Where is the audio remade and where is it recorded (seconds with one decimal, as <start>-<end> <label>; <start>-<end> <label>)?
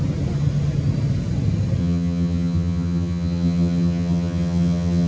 0.0-1.8 recorded; 1.8-5.1 remade